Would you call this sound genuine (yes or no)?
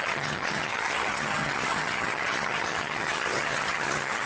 no